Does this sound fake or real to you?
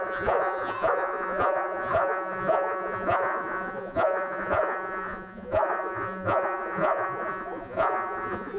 fake